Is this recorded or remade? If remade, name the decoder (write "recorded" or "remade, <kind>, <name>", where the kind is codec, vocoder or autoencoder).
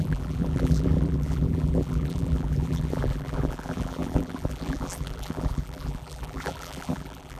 remade, vocoder, BigVGAN v2